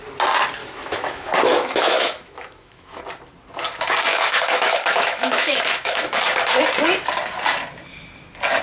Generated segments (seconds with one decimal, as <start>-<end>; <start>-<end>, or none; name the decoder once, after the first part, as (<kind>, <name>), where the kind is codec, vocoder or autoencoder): 0.6-3.0 (autoencoder, DAC-VAE); 4.1-6.2